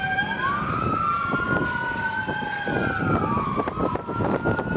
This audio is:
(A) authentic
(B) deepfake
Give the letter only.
A